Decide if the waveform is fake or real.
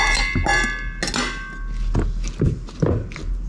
real